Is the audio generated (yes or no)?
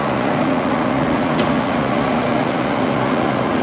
yes